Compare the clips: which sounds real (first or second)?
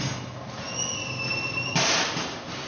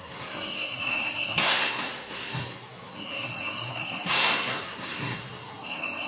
first